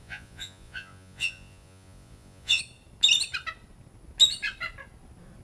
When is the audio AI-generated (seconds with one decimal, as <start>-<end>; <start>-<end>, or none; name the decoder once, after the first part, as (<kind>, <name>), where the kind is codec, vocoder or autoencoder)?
0.0-2.6 (vocoder, Vocos)